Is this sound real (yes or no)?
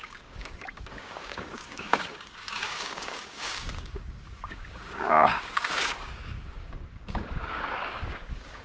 no